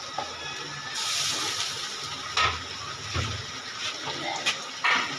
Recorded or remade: recorded